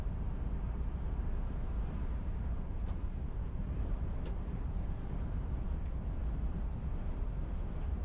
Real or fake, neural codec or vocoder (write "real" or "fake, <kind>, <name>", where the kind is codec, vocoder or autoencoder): fake, vocoder, BigVGAN v2